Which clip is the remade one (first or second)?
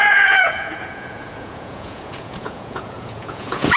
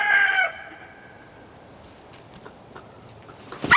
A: first